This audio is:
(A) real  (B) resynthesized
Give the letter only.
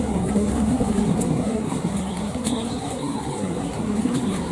B